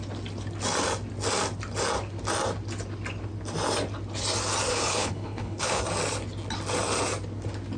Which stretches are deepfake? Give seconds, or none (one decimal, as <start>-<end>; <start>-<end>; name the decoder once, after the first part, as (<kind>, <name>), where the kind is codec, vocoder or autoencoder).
4.7-5.8 (codec, HILCodec)